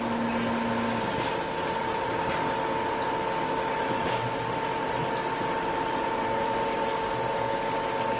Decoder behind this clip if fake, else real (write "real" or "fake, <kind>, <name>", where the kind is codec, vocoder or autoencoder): real